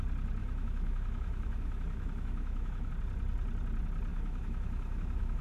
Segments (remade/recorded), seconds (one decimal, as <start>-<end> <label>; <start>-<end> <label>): 0.0-0.4 recorded; 0.4-2.9 remade; 2.9-4.1 recorded; 4.1-5.4 remade